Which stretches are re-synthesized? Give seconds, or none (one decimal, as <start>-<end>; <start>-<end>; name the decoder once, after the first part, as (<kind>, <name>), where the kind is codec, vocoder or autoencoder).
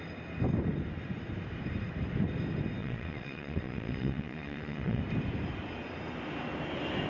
2.8-5.0 (vocoder, WaveNeXt)